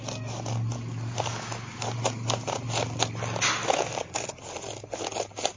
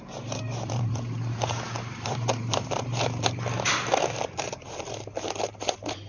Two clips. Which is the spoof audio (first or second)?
second